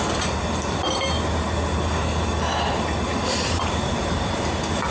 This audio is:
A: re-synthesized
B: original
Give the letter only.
B